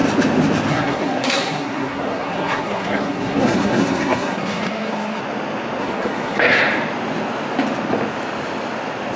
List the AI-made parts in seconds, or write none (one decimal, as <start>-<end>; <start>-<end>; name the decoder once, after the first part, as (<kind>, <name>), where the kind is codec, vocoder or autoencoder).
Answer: 0.7-5.2 (codec, SNAC); 5.8-6.6